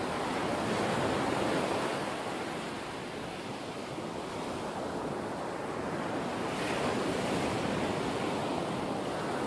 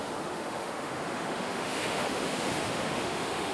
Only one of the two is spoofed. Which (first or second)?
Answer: second